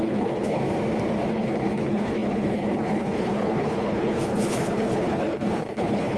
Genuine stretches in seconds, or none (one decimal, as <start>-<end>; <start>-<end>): 0.6-1.3